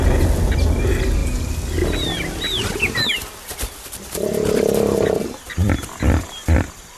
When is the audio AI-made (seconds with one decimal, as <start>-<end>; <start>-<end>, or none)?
none